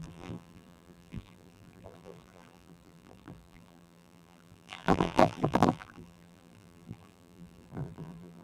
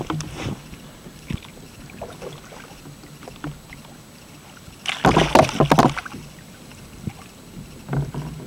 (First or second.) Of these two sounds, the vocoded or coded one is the first